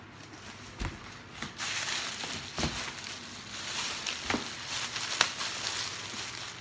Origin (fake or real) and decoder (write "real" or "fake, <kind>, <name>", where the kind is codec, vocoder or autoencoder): real